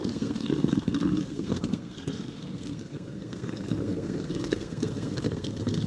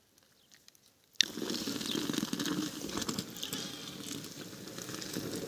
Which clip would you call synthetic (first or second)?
first